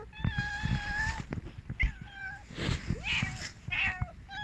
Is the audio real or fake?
real